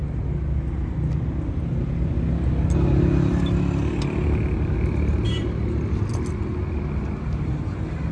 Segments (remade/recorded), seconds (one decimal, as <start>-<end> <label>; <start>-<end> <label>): 0.0-8.1 recorded